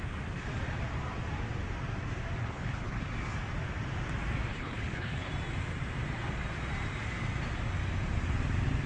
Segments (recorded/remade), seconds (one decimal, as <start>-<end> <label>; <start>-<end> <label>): 0.0-2.4 recorded; 2.4-3.1 remade; 3.1-4.5 recorded; 4.5-5.3 remade; 5.3-8.9 recorded

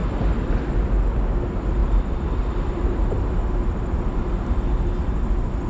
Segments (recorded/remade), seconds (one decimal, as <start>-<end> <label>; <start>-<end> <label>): 0.0-1.1 remade; 1.1-1.8 recorded; 1.8-4.8 remade; 4.8-5.7 recorded

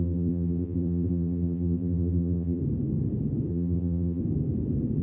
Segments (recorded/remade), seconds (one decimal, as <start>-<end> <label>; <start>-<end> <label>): 0.0-2.6 remade; 2.6-3.5 recorded; 3.5-4.2 remade; 4.2-5.0 recorded